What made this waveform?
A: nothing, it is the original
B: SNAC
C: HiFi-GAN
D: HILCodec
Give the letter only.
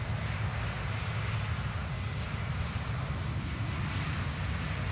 A